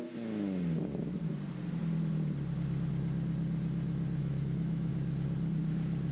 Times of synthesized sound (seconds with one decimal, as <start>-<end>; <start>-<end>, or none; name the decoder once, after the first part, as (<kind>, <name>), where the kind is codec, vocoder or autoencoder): 4.2-4.9 (autoencoder, DAC-VAE)